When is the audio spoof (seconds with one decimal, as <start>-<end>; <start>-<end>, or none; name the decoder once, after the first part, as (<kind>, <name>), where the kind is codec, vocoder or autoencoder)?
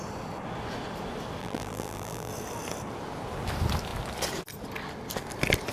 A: 1.4-2.3 (vocoder, BigVGAN v2)